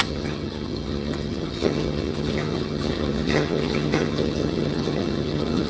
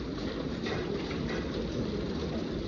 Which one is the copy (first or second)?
first